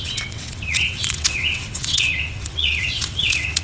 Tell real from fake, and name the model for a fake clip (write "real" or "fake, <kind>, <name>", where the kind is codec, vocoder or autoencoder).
fake, vocoder, WaveNeXt